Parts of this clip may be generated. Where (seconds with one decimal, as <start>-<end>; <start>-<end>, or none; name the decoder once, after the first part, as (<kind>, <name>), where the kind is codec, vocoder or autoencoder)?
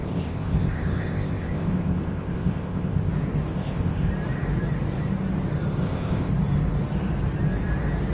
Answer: 0.0-3.1 (codec, ZipCodec); 3.5-4.1; 5.8-6.3